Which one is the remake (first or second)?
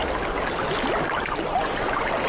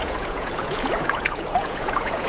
second